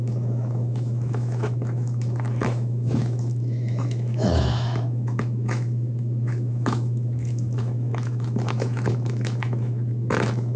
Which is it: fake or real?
fake